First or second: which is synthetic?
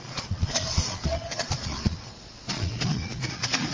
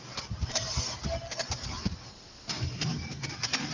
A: first